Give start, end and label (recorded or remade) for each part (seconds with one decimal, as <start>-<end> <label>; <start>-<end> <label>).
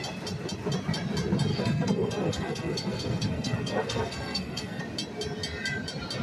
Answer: 0.0-1.5 recorded; 1.5-4.8 remade; 4.8-6.2 recorded